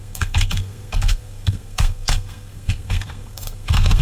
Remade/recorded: remade